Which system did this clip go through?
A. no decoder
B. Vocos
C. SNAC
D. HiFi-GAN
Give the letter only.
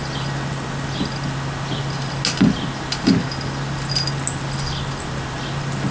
A